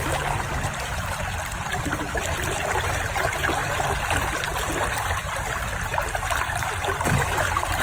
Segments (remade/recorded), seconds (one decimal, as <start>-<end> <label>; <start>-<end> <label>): 0.0-7.8 recorded